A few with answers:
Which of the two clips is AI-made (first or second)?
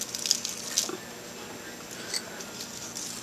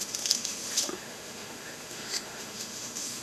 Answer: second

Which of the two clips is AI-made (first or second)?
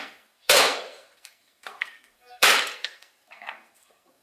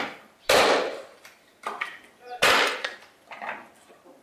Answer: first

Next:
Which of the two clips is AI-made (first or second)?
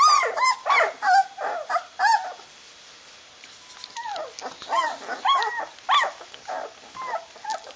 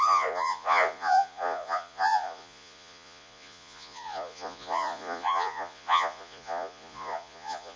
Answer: second